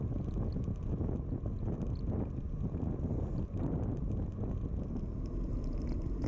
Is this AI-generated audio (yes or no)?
no